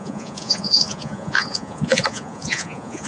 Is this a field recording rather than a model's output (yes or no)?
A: no